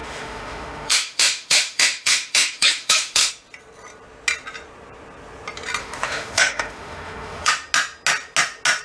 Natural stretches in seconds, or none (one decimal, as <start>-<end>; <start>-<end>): 3.3-5.8; 7.5-8.8